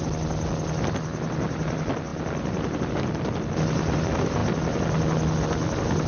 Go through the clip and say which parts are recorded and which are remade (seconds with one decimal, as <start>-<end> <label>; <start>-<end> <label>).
0.0-6.1 recorded